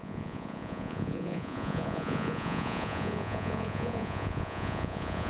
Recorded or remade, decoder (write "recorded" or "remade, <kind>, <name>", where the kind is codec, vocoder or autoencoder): remade, vocoder, Vocos